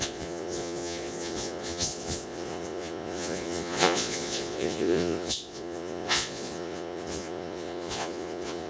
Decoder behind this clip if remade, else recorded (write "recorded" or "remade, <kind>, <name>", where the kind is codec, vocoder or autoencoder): remade, vocoder, Vocos